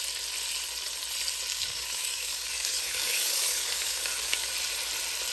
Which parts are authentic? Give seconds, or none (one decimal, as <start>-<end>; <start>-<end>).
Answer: 0.0-1.5; 4.5-5.3